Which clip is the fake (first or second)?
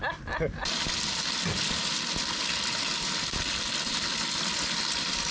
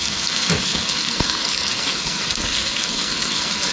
second